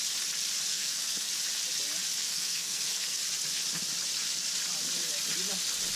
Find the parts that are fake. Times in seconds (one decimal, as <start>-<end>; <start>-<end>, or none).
0.7-1.3; 2.2-3.2